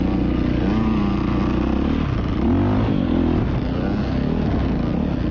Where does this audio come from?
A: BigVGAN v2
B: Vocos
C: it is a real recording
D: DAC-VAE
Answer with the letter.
C